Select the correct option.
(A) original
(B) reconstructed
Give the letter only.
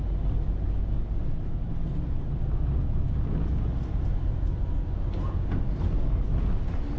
A